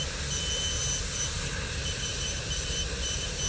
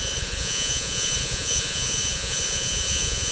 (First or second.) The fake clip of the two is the second